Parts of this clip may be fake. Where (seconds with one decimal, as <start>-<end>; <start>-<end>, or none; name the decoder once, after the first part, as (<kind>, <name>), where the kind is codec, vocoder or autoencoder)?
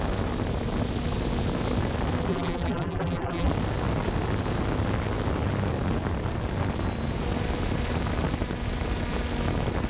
2.3-3.5 (vocoder, BigVGAN v2)